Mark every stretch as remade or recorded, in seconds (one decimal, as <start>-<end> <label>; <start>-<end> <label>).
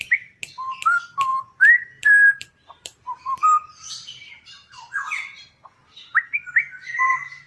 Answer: 0.0-1.3 recorded; 1.3-5.5 remade; 5.5-6.0 recorded; 6.0-7.5 remade